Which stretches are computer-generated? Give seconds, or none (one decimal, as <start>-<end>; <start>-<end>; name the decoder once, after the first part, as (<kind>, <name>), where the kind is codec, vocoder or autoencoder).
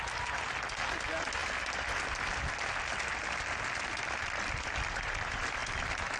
none